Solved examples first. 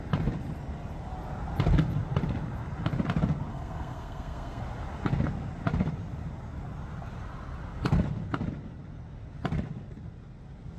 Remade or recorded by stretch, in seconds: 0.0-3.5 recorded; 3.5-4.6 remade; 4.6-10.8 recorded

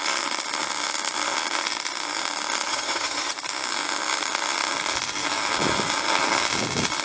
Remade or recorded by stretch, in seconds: 0.0-2.7 recorded; 2.7-3.3 remade; 3.3-7.0 recorded

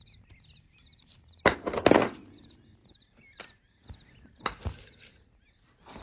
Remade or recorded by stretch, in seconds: 0.0-6.0 recorded

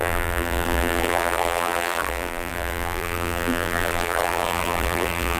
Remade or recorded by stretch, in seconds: 0.0-5.4 remade

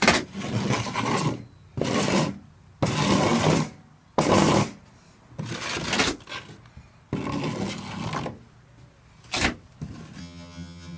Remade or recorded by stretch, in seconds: 0.0-10.2 recorded; 10.2-11.0 remade

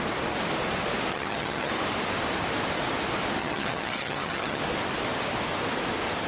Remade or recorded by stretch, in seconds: 0.0-1.1 recorded; 1.1-1.7 remade; 1.7-3.4 recorded; 3.4-4.6 remade; 4.6-6.3 recorded